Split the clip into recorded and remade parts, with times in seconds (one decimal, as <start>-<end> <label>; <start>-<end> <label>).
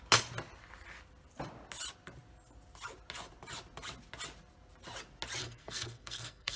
0.0-5.4 recorded; 5.4-6.6 remade